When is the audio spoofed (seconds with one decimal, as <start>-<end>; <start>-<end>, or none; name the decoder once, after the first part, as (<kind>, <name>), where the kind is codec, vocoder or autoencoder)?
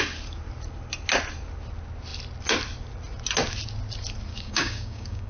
4.3-5.3 (codec, DAC)